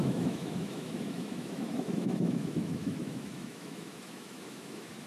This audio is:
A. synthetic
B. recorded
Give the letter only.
A